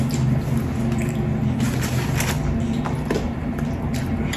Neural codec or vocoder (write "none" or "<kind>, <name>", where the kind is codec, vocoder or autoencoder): none